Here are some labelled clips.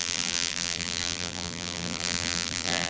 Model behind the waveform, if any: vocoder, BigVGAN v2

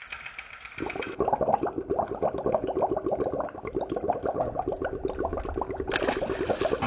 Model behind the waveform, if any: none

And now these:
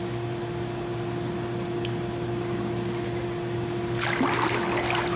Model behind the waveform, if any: none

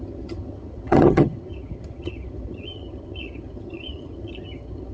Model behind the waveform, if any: vocoder, HiFi-GAN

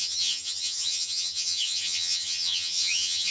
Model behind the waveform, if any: vocoder, HiFi-GAN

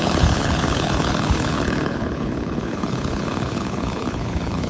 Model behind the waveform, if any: codec, HILCodec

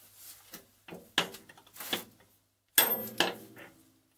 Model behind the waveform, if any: none